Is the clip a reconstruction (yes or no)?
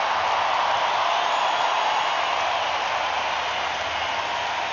no